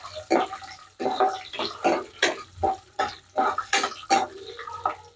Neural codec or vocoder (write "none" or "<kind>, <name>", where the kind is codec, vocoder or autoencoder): none